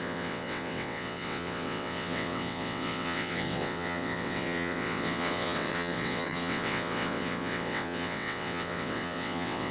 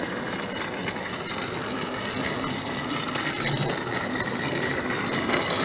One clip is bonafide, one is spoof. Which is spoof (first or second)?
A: first